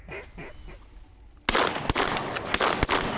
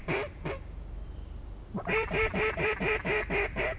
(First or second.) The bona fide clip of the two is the first